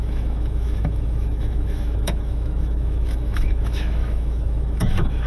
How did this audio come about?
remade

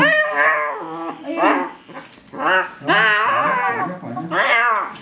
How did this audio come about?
recorded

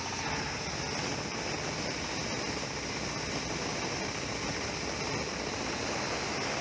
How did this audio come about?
recorded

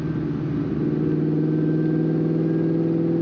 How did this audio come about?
recorded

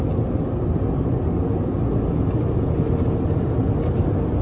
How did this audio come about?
recorded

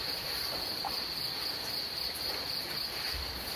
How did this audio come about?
recorded